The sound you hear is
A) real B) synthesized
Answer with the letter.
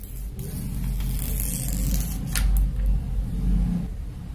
A